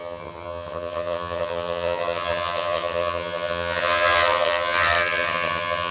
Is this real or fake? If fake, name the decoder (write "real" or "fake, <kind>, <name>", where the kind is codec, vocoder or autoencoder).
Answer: fake, vocoder, HiFi-GAN